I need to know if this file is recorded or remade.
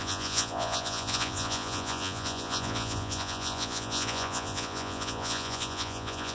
remade